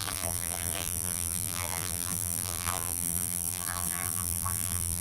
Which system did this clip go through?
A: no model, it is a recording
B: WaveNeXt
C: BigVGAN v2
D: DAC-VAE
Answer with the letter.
C